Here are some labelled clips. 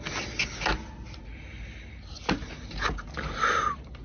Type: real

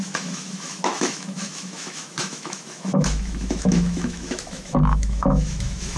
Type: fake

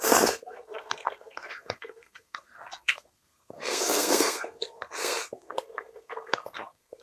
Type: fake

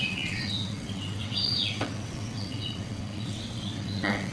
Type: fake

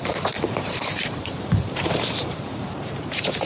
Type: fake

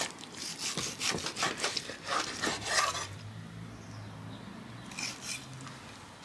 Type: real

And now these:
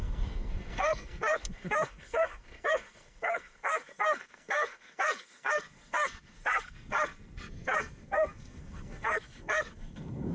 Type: fake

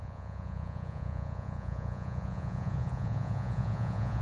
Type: fake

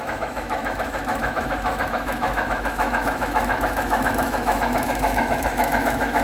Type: fake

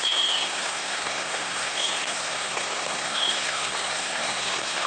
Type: fake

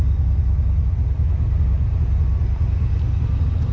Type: real